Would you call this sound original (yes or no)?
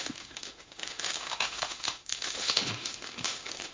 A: no